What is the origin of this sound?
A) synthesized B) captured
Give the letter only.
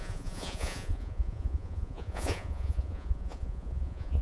A